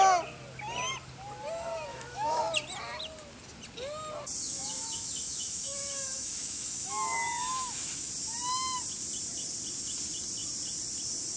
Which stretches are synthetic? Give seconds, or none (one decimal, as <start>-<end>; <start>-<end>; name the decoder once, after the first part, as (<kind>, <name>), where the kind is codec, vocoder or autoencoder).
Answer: 1.9-2.4 (autoencoder, DAC-VAE); 4.4-8.1